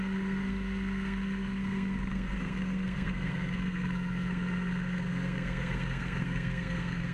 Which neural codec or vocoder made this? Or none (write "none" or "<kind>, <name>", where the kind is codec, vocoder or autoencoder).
codec, SNAC